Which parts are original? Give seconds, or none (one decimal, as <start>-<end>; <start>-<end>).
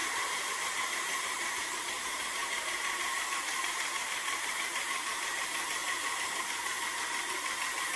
0.5-2.4; 4.9-5.8; 6.4-8.0